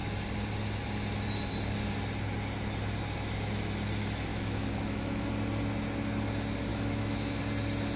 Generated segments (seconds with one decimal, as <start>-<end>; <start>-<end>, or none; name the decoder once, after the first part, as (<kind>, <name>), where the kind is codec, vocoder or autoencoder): 4.3-5.3 (autoencoder, DAC-VAE); 6.7-7.4

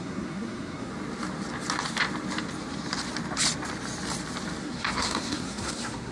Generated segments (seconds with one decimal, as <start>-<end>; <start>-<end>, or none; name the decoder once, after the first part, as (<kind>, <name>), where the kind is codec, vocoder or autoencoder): 0.0-0.9 (codec, SNAC); 4.6-6.1

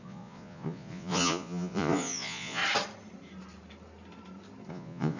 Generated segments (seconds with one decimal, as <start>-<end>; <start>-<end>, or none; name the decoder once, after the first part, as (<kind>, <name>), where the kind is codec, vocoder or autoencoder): 0.0-2.6 (vocoder, Vocos); 4.7-5.2